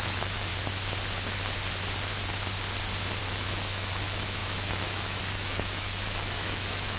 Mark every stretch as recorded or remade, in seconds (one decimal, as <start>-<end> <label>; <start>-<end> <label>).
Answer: 0.0-0.5 remade; 0.5-3.2 recorded; 3.2-7.0 remade